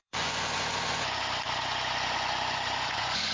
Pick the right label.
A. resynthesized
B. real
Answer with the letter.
A